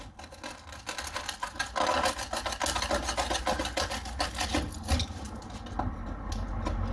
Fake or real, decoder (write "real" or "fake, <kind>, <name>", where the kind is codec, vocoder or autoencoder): real